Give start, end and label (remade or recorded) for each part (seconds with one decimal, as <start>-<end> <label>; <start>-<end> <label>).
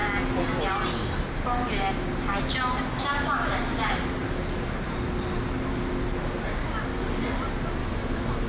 0.0-7.8 recorded; 7.8-8.5 remade